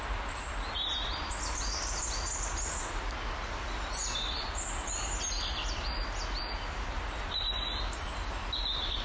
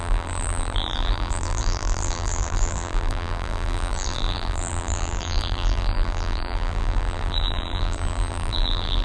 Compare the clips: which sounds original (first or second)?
first